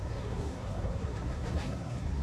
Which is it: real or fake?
fake